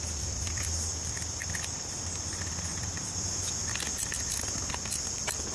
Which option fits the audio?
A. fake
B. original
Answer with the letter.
A